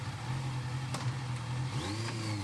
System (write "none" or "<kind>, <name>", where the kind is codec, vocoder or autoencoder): none